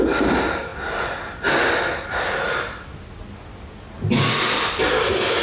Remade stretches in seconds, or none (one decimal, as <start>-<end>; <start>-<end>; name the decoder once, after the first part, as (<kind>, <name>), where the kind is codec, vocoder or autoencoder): none